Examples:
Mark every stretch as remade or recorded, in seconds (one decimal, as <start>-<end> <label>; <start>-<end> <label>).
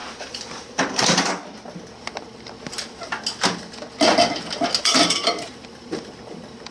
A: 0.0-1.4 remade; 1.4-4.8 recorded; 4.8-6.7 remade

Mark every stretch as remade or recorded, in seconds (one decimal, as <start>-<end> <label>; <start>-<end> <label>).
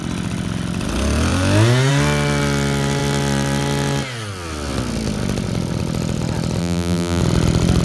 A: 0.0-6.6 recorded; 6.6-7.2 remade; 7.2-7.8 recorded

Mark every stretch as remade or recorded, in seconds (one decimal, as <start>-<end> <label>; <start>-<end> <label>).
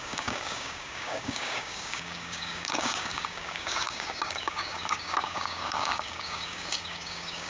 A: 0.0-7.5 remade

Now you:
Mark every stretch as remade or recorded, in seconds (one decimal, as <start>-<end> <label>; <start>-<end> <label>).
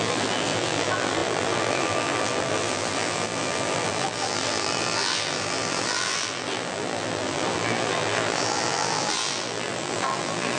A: 0.0-10.6 remade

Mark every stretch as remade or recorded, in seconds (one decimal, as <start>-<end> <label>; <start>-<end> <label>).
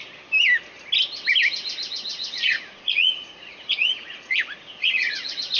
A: 0.0-2.1 recorded; 2.1-5.6 remade